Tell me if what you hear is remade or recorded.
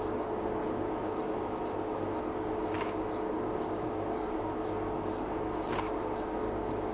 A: remade